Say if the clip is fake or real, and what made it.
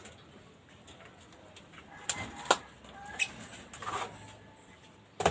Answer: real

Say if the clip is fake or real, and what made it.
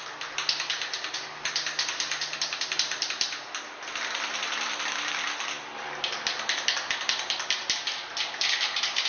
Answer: real